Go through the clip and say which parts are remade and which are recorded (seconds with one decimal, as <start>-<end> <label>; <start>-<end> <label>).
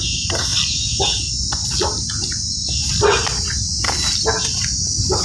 0.0-5.2 recorded